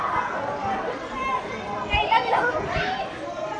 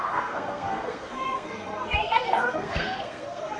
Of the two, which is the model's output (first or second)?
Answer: second